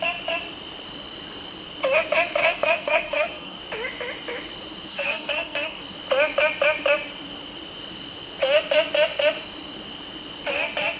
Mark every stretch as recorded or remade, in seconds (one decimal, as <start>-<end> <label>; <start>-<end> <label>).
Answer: 0.0-2.4 recorded; 2.4-3.6 remade; 3.6-4.9 recorded; 4.9-5.8 remade; 5.8-11.0 recorded